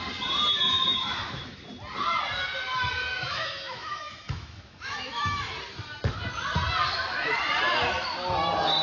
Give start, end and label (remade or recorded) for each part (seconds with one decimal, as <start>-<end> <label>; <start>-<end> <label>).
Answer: 0.0-0.5 recorded; 0.5-1.6 remade; 1.6-3.1 recorded; 3.1-5.5 remade; 5.5-8.8 recorded